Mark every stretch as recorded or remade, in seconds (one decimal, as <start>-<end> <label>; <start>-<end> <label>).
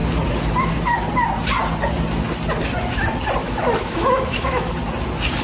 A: 0.0-3.4 recorded; 3.4-4.7 remade; 4.7-5.4 recorded